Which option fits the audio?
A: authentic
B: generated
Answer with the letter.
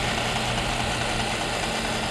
A